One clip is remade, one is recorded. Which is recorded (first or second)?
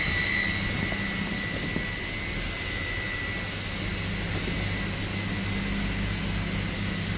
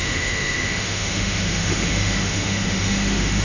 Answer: first